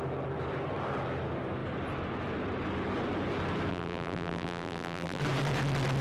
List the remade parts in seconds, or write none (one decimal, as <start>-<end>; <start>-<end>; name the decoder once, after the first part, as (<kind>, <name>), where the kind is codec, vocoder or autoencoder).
3.7-5.2 (vocoder, BigVGAN v2)

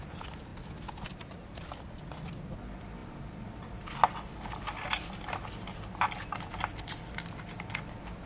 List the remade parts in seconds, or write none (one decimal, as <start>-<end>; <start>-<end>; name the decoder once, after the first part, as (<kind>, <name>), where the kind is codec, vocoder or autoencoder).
none